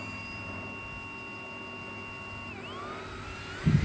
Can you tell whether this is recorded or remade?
recorded